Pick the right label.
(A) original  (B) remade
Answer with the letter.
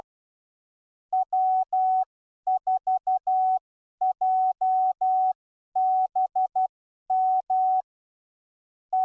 A